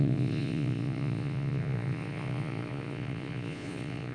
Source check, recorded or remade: remade